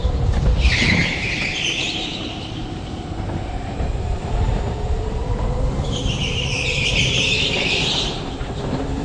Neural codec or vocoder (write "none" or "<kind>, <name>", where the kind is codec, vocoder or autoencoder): vocoder, BigVGAN v2